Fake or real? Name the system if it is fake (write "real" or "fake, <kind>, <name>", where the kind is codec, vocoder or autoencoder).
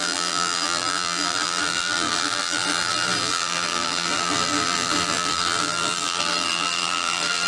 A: fake, vocoder, BigVGAN v2